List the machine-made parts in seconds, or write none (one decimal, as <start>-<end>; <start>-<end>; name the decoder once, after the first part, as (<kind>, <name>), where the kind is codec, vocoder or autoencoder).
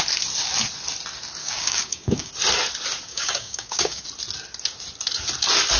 1.4-2.3 (codec, DAC); 3.1-4.0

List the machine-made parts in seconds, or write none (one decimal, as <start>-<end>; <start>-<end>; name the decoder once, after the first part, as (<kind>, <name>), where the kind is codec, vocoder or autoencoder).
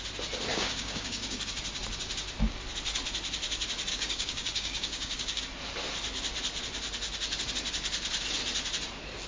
0.5-1.5 (codec, DAC); 3.9-5.4